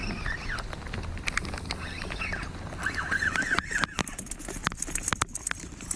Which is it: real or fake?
real